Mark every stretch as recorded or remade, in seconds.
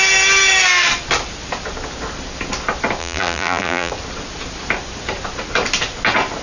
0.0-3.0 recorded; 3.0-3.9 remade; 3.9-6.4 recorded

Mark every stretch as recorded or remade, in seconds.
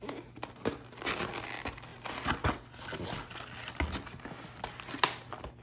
0.0-5.6 recorded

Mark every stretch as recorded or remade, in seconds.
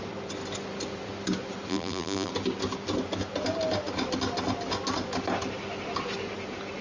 0.0-1.7 recorded; 1.7-2.3 remade; 2.3-6.8 recorded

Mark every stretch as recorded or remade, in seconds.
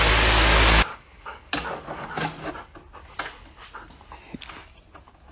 0.0-0.9 recorded; 0.9-2.5 remade; 2.5-5.3 recorded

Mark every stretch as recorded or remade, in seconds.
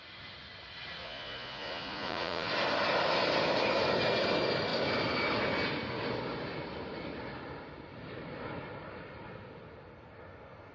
0.0-1.0 recorded; 1.0-2.5 remade; 2.5-10.7 recorded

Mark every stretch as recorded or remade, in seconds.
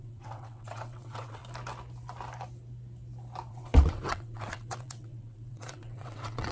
0.0-1.4 remade; 1.4-3.5 recorded; 3.5-6.5 remade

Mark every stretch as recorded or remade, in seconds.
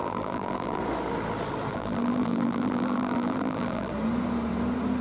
0.0-0.8 remade; 0.8-1.7 recorded; 1.7-3.9 remade; 3.9-5.0 recorded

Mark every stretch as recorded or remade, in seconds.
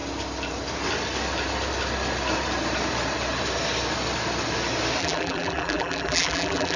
0.0-5.0 recorded; 5.0-6.8 remade